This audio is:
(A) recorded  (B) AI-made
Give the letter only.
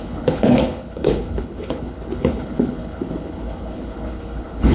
B